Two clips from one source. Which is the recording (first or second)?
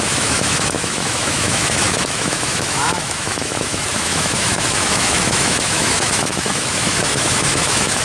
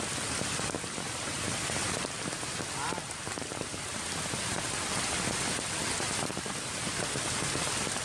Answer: second